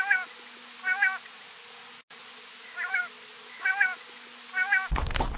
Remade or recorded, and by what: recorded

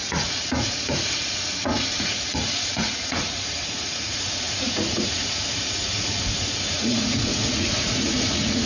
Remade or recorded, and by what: remade, vocoder, Vocos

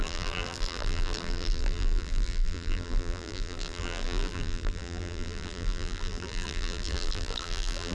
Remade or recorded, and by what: remade, vocoder, BigVGAN v2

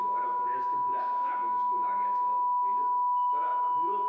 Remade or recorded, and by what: remade, autoencoder, DAC-VAE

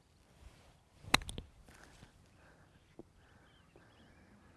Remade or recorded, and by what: recorded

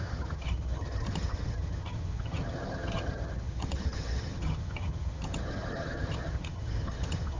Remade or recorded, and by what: remade, vocoder, HiFi-GAN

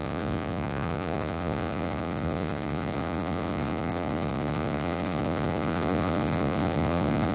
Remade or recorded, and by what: remade, vocoder, Vocos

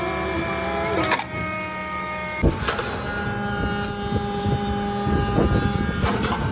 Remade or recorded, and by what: recorded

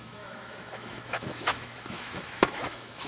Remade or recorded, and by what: remade, autoencoder, DAC-VAE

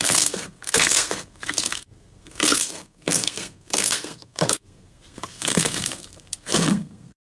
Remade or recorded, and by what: remade, codec, SNAC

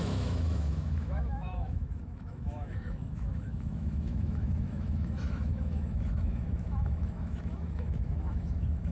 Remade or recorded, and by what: remade, autoencoder, DAC-VAE